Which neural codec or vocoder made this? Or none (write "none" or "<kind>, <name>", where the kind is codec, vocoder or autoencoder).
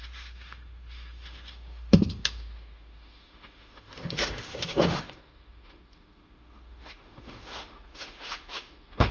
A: autoencoder, DAC-VAE